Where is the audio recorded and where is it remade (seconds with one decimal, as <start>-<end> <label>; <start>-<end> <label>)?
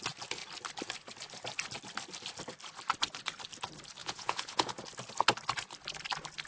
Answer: 0.0-4.0 recorded; 4.0-4.7 remade; 4.7-6.5 recorded